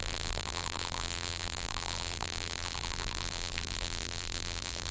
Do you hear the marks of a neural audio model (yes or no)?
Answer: yes